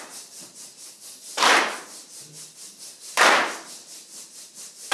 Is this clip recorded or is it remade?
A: recorded